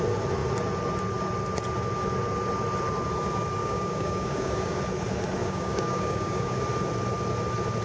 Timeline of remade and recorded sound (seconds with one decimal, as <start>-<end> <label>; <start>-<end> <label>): 0.0-3.6 recorded; 3.6-4.8 remade; 4.8-5.4 recorded; 5.4-6.6 remade; 6.6-7.8 recorded